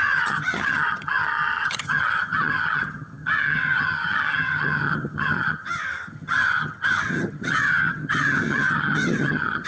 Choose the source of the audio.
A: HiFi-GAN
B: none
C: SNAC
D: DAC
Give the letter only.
A